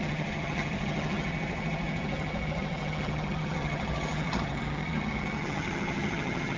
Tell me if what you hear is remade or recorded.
remade